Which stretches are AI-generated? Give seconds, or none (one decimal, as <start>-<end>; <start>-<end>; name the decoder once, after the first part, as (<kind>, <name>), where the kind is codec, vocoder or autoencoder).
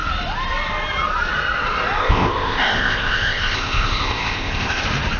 2.0-4.8 (codec, ZipCodec)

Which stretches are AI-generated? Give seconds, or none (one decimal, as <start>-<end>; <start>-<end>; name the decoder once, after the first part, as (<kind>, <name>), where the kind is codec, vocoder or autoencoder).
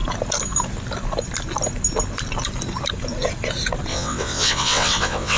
3.9-5.4 (vocoder, WaveNeXt)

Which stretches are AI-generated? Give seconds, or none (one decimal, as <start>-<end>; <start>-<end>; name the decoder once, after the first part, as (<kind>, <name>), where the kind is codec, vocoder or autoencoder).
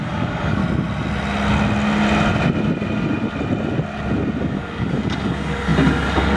0.0-0.6 (codec, DAC); 4.4-6.4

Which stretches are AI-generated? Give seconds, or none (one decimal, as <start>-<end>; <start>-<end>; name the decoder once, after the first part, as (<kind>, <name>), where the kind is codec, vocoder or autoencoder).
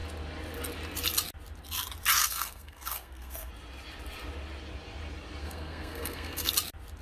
2.2-3.5 (codec, SNAC); 5.4-6.5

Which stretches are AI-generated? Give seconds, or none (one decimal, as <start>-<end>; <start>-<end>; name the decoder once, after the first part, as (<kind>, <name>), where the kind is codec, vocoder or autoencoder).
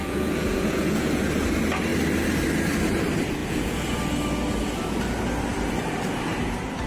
0.0-1.3 (vocoder, Vocos); 3.4-4.0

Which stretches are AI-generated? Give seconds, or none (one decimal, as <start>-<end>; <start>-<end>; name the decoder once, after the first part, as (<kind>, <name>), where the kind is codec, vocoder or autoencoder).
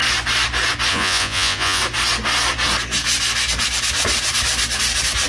0.9-1.8 (vocoder, Vocos)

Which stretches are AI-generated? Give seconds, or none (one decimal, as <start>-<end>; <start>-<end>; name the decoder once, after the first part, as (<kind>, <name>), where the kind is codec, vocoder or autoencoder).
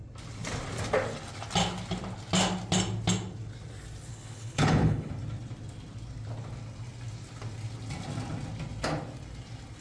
4.1-5.1 (codec, HILCodec)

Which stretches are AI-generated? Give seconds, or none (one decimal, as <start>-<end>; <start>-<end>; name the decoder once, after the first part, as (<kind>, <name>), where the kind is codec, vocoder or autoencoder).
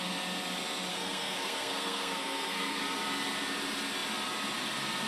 0.9-2.8 (codec, SNAC)